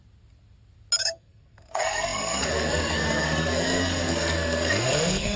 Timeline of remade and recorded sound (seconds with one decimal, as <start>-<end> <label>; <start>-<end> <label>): 0.0-1.0 recorded; 1.0-5.4 remade